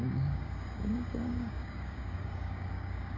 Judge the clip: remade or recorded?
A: remade